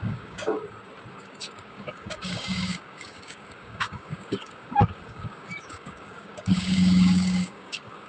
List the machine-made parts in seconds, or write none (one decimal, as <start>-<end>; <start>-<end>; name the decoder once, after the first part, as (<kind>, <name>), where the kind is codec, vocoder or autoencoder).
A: 0.0-0.6 (codec, DAC); 1.1-8.1

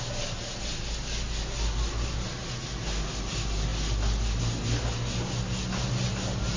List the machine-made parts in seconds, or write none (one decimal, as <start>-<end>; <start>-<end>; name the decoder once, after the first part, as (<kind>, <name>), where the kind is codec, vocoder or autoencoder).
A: none

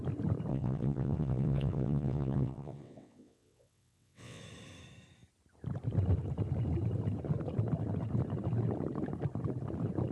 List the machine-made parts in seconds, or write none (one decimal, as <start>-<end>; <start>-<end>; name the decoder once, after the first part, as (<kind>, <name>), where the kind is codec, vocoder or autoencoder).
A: 0.5-4.4 (vocoder, WaveNeXt)

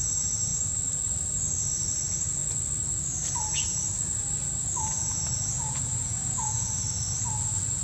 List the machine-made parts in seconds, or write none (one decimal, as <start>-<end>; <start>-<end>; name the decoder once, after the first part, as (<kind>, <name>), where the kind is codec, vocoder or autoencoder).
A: 4.9-6.7 (vocoder, Vocos)

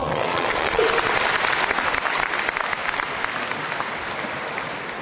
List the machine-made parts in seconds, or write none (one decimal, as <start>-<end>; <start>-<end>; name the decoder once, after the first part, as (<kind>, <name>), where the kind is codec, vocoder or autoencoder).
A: 0.0-0.8 (vocoder, Vocos)